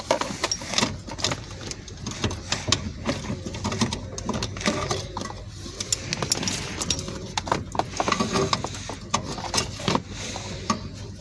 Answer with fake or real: real